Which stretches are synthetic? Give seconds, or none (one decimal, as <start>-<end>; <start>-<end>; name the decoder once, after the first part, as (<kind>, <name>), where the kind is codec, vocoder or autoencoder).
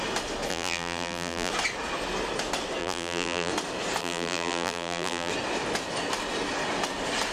0.5-1.5 (vocoder, BigVGAN v2); 2.8-3.5; 4.0-5.3